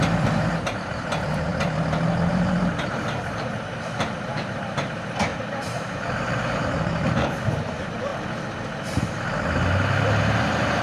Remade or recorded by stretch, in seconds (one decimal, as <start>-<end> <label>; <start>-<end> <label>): 0.0-1.5 remade; 1.5-2.3 recorded; 2.3-8.1 remade; 8.1-10.2 recorded; 10.2-10.8 remade